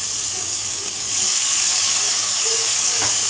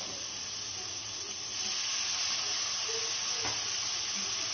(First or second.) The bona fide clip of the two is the second